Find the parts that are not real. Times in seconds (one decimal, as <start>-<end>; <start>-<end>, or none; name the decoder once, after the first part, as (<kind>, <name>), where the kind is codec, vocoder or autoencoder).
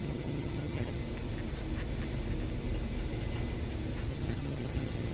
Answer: 0.0-1.0 (vocoder, HiFi-GAN); 4.1-5.1